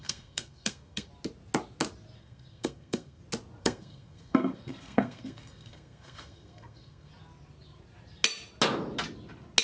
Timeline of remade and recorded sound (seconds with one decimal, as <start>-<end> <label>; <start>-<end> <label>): 0.0-1.1 remade; 1.1-2.2 recorded; 2.2-3.2 remade; 3.2-3.6 recorded; 3.6-7.1 remade; 7.1-9.6 recorded